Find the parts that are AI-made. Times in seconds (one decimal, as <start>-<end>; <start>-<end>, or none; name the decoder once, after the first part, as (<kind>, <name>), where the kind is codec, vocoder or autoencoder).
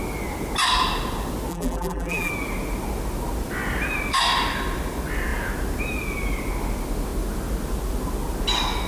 1.5-2.3 (vocoder, BigVGAN v2)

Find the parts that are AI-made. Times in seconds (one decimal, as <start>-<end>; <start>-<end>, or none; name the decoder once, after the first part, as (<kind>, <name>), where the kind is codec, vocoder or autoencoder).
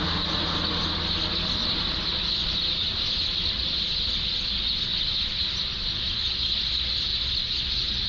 1.6-3.6 (vocoder, BigVGAN v2)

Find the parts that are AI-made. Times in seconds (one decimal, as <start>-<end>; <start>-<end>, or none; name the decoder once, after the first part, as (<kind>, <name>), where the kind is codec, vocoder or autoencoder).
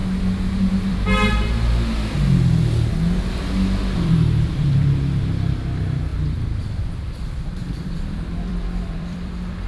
4.0-6.1 (vocoder, BigVGAN v2); 6.8-9.7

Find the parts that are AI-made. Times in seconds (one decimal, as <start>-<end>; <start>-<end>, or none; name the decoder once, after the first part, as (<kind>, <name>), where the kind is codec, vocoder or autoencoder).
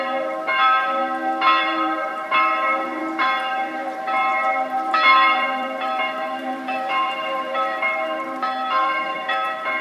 0.0-1.0 (vocoder, BigVGAN v2); 1.6-9.8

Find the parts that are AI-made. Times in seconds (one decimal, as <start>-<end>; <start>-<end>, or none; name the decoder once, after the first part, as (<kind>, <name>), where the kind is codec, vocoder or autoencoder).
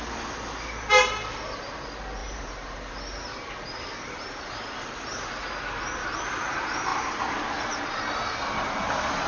2.2-5.2 (vocoder, BigVGAN v2)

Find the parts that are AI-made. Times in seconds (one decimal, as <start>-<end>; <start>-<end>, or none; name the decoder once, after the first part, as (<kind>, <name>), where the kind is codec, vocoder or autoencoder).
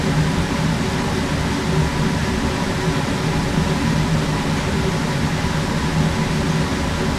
0.0-1.2 (vocoder, BigVGAN v2); 2.2-4.9